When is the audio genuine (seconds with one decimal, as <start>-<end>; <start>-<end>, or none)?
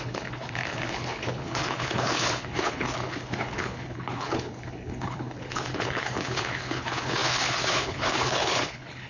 none